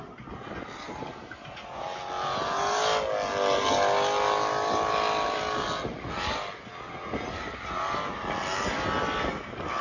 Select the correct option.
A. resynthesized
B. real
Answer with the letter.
B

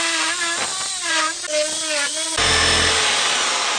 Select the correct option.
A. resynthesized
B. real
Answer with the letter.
B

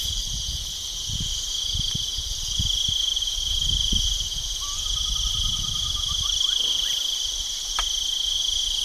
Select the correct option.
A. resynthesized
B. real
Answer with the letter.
B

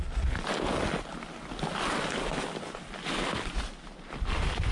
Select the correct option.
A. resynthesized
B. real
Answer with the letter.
B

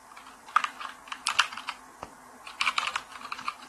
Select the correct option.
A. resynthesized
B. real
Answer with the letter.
B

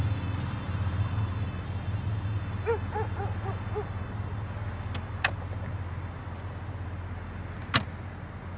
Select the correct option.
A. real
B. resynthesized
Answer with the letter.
A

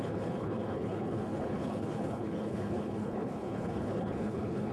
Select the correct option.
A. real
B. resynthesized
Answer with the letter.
B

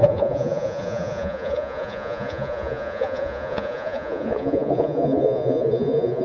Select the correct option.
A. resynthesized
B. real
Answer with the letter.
A